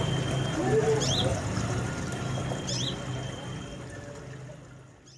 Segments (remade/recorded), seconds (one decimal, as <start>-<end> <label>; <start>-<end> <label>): 0.0-1.3 recorded; 1.3-2.4 remade; 2.4-5.2 recorded